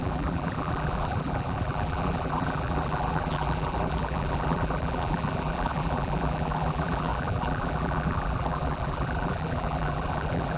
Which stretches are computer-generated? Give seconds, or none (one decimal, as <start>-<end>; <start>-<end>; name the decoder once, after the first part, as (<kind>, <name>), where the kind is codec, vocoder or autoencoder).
0.0-10.6 (vocoder, BigVGAN v2)